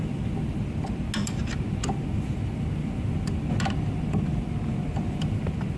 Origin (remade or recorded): recorded